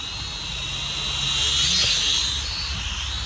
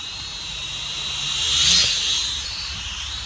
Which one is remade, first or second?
second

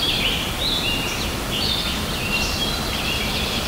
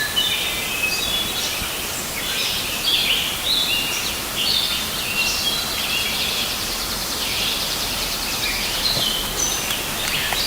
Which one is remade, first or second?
first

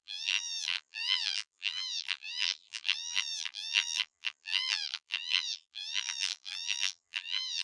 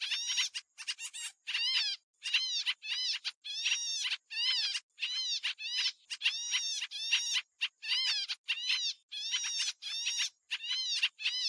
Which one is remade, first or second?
first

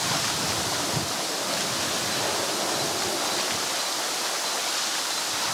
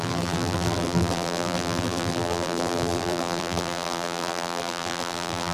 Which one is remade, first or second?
second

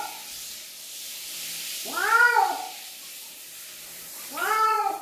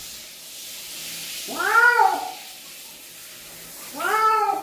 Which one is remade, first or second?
first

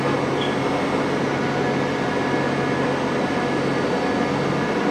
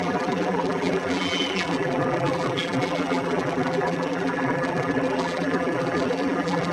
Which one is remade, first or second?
second